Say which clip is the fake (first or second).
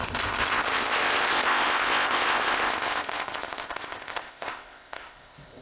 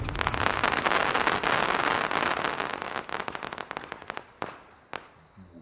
first